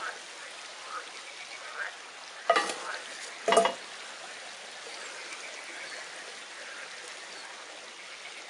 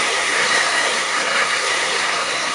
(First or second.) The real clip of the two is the first